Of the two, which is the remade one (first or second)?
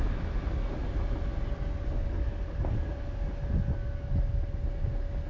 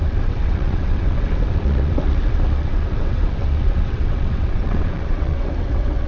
second